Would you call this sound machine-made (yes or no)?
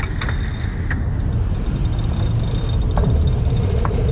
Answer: no